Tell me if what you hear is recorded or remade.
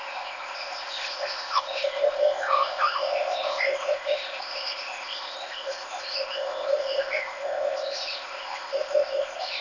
remade